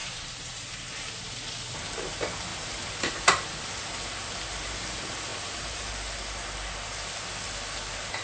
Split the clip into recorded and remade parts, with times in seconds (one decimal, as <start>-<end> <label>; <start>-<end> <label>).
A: 0.0-1.1 remade; 1.1-2.5 recorded; 2.5-3.1 remade; 3.1-5.3 recorded; 5.3-5.9 remade; 5.9-8.2 recorded

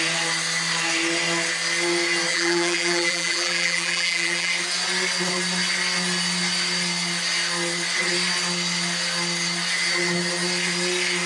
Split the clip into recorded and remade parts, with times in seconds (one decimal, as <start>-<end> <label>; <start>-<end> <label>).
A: 0.0-2.3 recorded; 2.3-4.5 remade; 4.5-11.3 recorded